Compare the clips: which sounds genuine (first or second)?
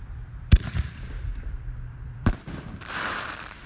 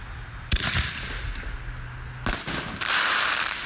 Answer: second